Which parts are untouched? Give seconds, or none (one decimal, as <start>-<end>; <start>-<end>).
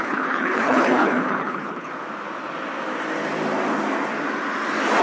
1.9-5.0